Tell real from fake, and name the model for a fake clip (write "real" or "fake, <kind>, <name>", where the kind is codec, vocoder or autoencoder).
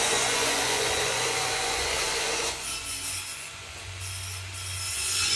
fake, vocoder, Vocos